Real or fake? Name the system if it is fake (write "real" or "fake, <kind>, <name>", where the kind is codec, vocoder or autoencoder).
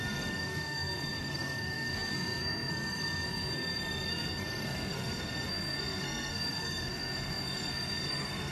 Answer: fake, codec, SNAC